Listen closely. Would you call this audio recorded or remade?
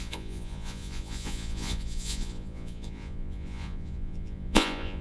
remade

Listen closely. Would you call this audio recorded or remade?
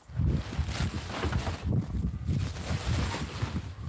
recorded